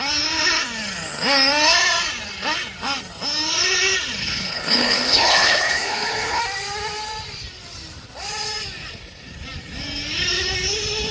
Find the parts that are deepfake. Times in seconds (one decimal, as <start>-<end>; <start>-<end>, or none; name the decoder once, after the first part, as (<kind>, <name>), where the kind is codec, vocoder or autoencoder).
4.2-6.4 (codec, HILCodec)